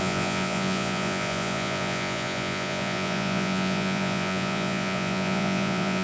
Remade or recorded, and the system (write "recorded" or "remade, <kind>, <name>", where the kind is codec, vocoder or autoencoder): remade, vocoder, Vocos